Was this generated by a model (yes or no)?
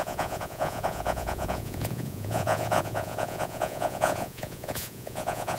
yes